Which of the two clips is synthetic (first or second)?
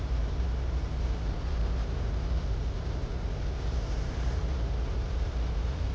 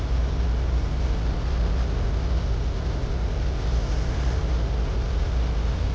first